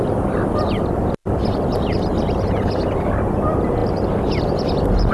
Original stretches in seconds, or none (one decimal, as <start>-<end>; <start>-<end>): 0.0-5.1